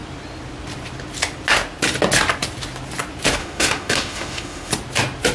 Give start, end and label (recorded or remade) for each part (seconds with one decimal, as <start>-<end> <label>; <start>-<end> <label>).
0.0-3.4 recorded; 3.4-4.7 remade; 4.7-5.3 recorded